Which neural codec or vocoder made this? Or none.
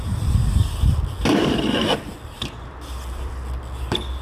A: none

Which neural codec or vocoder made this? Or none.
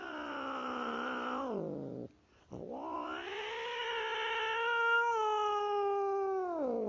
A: none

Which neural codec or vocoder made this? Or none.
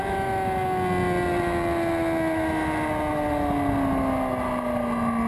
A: none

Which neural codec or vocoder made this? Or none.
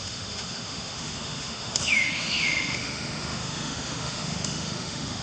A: autoencoder, DAC-VAE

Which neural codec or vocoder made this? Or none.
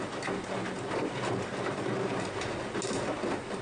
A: none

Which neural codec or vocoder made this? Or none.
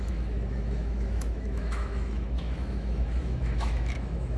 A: autoencoder, DAC-VAE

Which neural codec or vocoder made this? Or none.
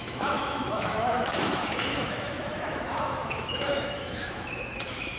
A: autoencoder, DAC-VAE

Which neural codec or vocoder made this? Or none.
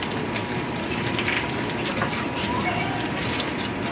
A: none